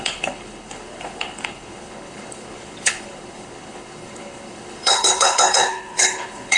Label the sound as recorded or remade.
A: remade